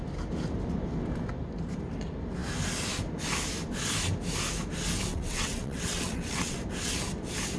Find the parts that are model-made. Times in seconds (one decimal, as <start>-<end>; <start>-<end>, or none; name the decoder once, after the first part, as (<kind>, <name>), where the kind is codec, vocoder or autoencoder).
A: 5.1-6.6 (vocoder, WaveNeXt)